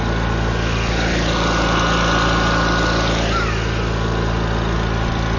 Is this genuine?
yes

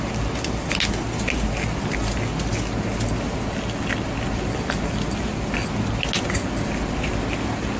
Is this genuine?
yes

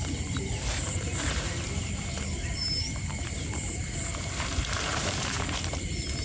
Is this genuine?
no